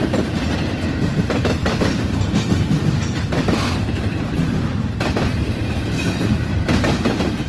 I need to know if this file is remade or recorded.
remade